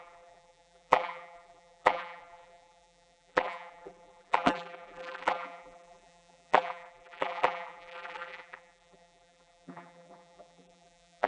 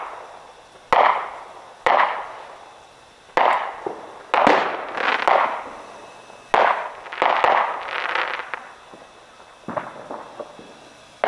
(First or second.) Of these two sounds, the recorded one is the second